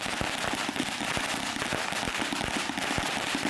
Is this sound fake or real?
fake